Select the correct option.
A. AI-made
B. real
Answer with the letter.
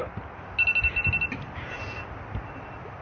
B